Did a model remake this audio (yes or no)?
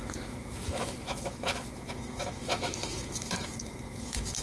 yes